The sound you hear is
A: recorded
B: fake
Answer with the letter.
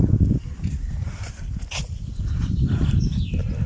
A